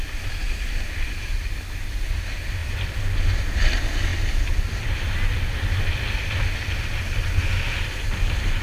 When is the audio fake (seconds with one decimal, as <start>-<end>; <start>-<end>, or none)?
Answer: none